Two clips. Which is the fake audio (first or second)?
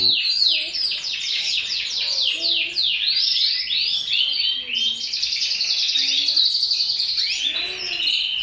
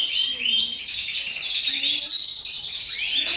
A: second